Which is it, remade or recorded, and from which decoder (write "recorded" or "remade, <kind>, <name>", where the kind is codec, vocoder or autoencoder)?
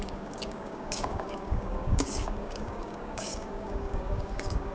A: remade, codec, DAC